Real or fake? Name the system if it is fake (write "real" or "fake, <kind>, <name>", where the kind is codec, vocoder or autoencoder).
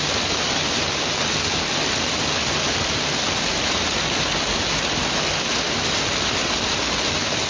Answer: real